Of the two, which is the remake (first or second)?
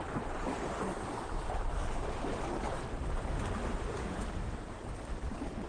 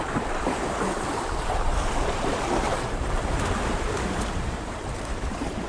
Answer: second